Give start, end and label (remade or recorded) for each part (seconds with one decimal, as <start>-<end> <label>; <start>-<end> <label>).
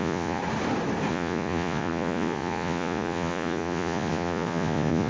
0.0-0.4 remade; 0.4-1.1 recorded; 1.1-5.1 remade